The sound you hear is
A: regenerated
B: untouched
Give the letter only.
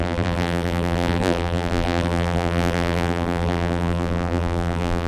A